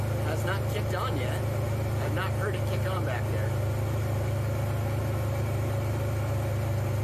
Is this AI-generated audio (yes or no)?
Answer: no